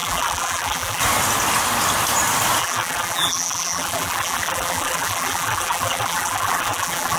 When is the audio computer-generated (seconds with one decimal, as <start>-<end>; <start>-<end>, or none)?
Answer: 0.0-1.0; 2.6-7.2